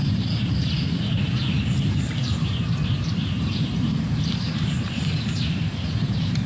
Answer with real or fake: fake